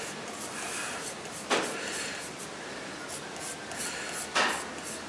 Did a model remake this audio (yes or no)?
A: no